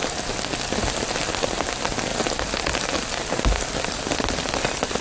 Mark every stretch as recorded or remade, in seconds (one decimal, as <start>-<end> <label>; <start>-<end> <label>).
0.0-5.0 recorded